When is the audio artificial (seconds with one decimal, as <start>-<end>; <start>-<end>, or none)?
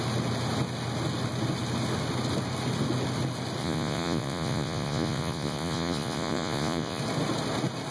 3.6-7.0